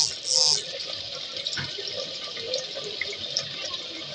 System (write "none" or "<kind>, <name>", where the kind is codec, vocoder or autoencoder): none